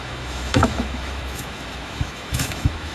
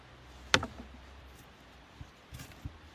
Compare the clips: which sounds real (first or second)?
second